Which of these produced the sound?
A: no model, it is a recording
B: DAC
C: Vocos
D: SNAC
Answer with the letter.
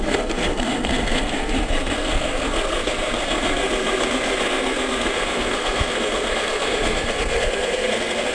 D